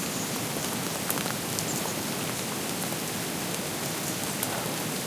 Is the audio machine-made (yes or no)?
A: no